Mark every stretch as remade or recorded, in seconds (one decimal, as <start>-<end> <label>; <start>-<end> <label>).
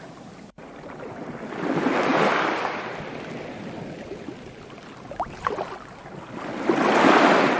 0.0-7.6 recorded